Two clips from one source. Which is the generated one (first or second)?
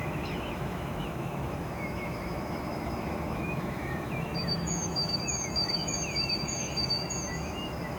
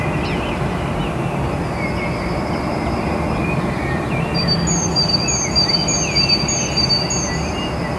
first